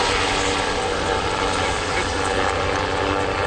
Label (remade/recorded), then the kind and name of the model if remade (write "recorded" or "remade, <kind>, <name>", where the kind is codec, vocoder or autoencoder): recorded